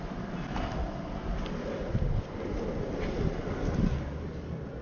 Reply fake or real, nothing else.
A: real